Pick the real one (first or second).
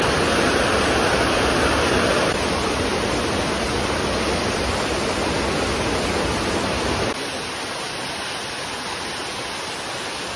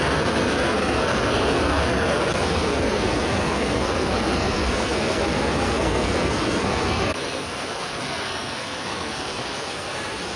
first